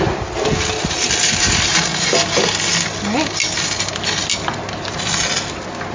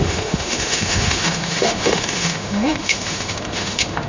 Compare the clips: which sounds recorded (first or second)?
first